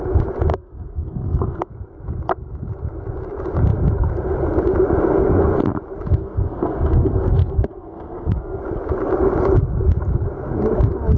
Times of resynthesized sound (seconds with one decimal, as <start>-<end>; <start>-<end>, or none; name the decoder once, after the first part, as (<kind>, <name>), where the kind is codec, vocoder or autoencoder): 0.5-1.7 (codec, SNAC); 6.2-8.6